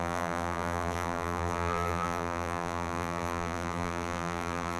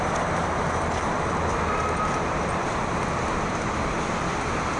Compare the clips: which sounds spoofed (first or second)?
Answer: first